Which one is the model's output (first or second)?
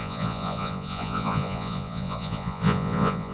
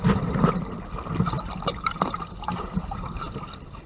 first